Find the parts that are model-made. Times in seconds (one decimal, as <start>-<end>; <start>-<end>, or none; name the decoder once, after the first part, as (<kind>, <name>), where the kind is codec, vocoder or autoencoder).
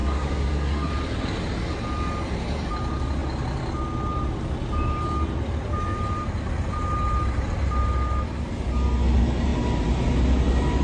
0.0-0.9 (codec, SNAC)